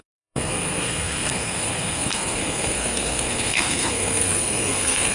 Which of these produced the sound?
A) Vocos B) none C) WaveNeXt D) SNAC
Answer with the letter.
D